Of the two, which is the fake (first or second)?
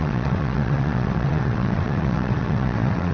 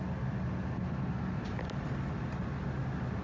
first